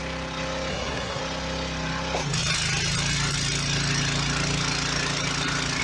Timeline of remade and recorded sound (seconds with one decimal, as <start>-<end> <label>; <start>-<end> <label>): 0.0-0.7 recorded; 0.7-1.2 remade; 1.2-5.8 recorded